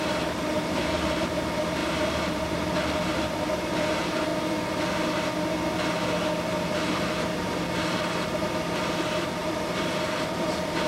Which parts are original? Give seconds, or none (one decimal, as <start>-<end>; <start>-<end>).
4.3-6.5